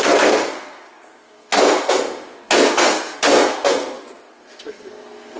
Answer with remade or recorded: remade